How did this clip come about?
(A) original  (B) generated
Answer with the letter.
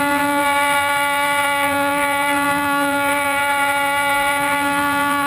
B